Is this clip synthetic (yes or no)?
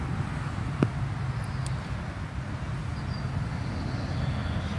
no